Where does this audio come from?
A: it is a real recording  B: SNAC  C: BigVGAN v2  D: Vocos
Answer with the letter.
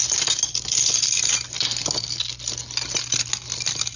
A